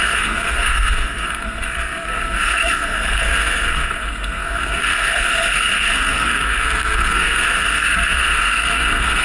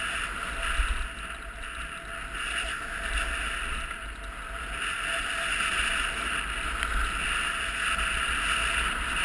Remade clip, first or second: first